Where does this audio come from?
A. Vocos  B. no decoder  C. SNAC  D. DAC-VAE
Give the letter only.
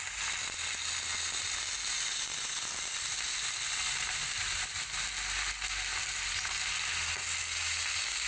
B